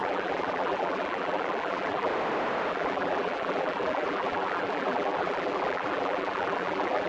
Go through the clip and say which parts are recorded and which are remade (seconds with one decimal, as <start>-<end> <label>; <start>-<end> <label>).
0.0-2.1 remade; 2.1-2.7 recorded; 2.7-7.1 remade